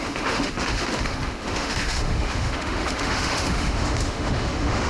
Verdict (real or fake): fake